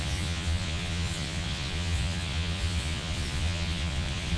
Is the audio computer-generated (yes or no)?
yes